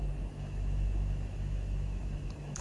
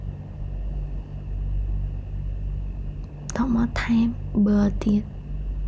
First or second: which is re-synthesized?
first